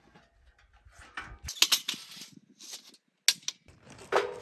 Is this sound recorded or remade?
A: recorded